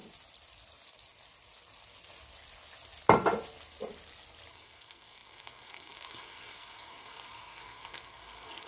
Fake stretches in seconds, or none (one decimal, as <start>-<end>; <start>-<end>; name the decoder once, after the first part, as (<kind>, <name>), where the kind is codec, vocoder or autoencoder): 4.5-8.7 (codec, SNAC)

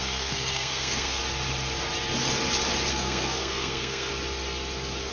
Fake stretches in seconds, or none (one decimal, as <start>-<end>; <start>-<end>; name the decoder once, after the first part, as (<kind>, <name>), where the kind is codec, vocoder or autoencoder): 0.0-1.2 (codec, SNAC); 2.9-4.1

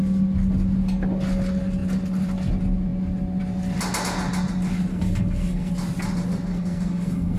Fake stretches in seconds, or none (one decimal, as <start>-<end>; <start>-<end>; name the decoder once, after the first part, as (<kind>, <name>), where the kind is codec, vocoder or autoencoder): 4.9-5.7 (codec, SNAC); 6.5-7.4

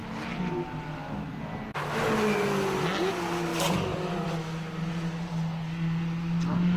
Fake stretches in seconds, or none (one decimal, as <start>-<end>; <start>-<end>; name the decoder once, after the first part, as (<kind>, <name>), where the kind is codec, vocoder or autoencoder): none

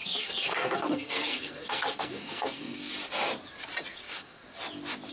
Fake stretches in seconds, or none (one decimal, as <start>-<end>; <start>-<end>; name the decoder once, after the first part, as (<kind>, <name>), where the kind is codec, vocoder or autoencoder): 0.0-2.9 (codec, SNAC); 3.9-4.4

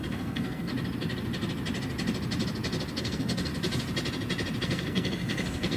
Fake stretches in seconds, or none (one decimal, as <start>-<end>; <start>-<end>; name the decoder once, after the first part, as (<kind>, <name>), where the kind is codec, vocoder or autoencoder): 0.0-0.7 (codec, SNAC); 3.0-3.5; 4.6-5.8

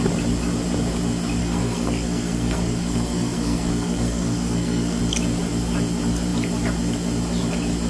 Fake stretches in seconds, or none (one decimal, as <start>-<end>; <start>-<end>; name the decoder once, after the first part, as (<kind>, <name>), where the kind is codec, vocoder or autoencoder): 1.4-5.0 (codec, SNAC)

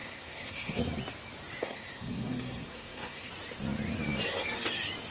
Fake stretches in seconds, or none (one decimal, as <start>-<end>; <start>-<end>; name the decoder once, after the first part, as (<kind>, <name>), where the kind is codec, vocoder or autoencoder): 0.0-0.8 (codec, SNAC); 1.6-3.3